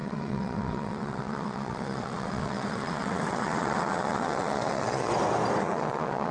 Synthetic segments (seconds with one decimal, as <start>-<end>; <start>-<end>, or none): 0.0-5.1; 5.6-6.3